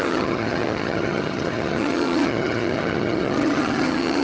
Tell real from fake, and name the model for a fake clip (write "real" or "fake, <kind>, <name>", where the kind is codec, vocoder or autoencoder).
fake, vocoder, HiFi-GAN